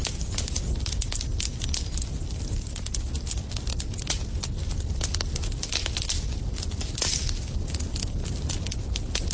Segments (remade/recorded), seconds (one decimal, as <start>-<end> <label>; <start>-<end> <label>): 0.0-9.3 recorded